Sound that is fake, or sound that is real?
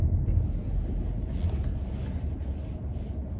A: real